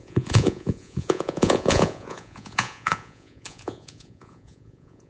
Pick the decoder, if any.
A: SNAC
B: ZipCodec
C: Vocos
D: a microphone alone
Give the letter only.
C